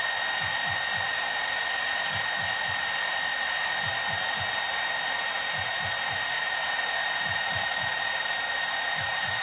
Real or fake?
real